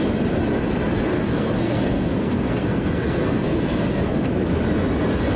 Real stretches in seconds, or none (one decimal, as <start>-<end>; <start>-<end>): 0.0-1.1; 4.3-5.4